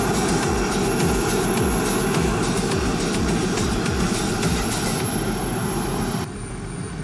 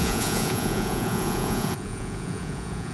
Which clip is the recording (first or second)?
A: first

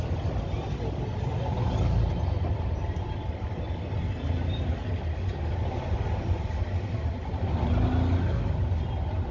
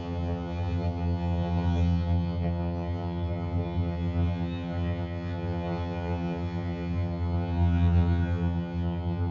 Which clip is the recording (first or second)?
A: first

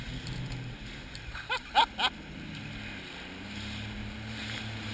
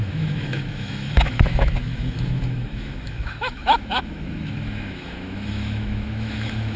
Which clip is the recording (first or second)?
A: first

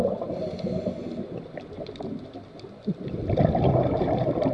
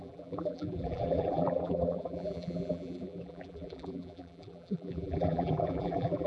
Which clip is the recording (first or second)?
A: first